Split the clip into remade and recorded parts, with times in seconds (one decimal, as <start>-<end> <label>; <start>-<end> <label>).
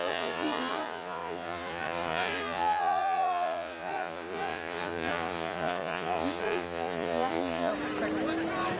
0.0-7.7 remade; 7.7-8.8 recorded